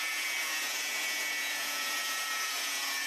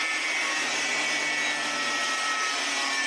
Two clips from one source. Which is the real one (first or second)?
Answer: second